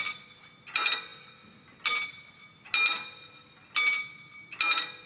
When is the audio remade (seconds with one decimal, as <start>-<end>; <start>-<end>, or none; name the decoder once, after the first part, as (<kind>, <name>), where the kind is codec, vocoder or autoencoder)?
none